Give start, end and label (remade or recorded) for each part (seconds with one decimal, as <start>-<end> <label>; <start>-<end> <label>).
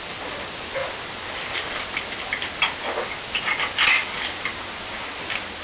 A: 0.0-5.6 recorded